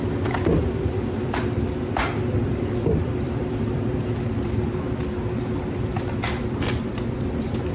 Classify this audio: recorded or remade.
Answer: remade